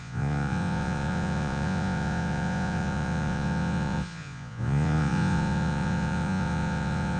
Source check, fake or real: fake